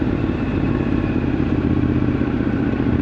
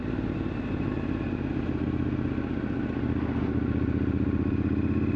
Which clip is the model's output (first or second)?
first